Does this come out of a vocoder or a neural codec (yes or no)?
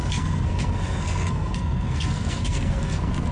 yes